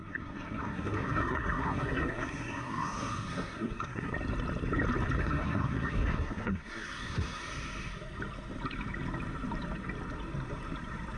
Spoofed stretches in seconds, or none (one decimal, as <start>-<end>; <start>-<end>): 0.0-4.1; 5.2-7.4

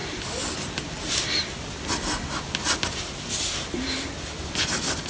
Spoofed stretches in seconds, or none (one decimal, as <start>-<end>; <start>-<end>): none